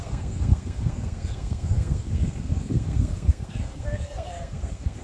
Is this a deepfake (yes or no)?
yes